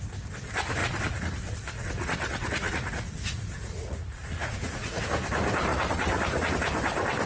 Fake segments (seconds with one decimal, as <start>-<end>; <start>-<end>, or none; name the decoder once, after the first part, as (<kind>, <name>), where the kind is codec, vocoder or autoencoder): 0.8-5.0 (vocoder, Vocos); 5.7-6.5